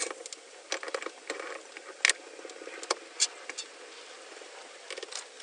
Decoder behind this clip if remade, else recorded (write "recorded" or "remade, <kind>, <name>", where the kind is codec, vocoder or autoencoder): recorded